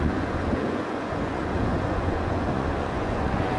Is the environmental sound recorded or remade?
remade